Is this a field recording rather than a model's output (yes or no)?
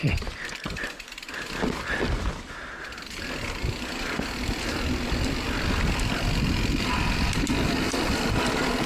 yes